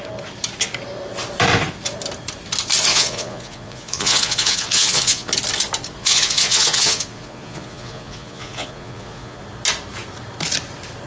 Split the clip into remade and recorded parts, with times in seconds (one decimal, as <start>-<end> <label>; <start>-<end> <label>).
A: 0.0-2.9 recorded; 2.9-5.3 remade; 5.3-6.0 recorded; 6.0-9.4 remade; 9.4-11.1 recorded